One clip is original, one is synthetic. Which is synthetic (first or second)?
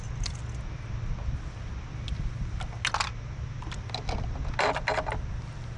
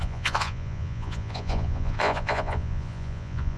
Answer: second